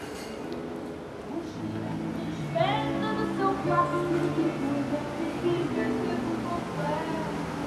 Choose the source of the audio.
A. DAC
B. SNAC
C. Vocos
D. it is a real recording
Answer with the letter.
D